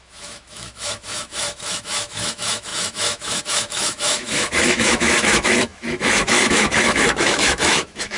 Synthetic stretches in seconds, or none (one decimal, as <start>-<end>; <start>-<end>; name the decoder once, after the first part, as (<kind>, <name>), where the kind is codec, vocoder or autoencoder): 0.0-8.2 (autoencoder, DAC-VAE)